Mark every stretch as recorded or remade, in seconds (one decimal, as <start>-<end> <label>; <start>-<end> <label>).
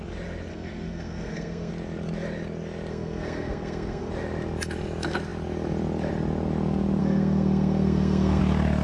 0.0-0.5 recorded; 0.5-1.7 remade; 1.7-2.9 recorded; 2.9-4.1 remade; 4.1-7.0 recorded; 7.0-8.4 remade; 8.4-8.8 recorded